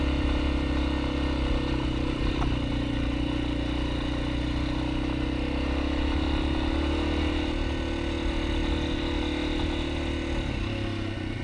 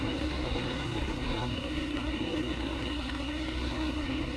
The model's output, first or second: second